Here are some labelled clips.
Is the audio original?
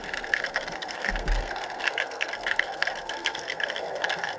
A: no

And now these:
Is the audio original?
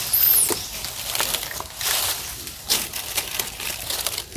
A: yes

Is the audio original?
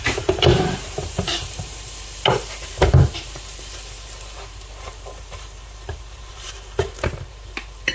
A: no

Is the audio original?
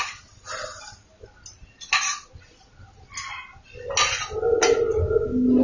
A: yes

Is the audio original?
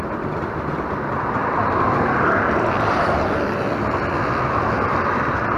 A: no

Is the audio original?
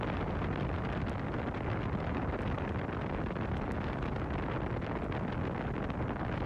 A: yes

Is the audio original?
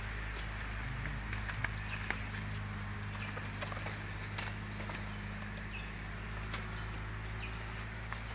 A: yes